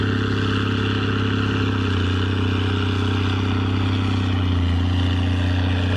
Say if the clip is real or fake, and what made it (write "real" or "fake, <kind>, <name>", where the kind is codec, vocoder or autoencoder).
real